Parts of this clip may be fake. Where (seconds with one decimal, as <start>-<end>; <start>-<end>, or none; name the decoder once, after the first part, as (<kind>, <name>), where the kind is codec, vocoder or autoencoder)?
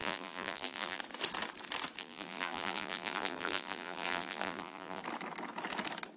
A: 0.0-1.0 (vocoder, BigVGAN v2); 2.0-5.0